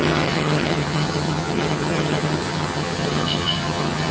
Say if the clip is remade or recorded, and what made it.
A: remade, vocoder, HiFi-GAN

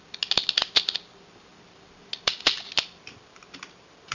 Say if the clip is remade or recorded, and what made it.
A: recorded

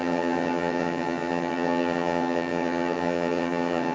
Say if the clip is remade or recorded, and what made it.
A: remade, vocoder, HiFi-GAN